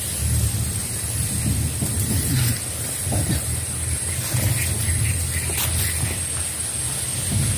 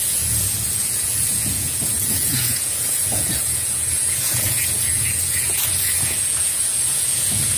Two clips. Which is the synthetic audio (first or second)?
second